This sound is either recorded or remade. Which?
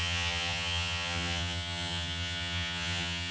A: remade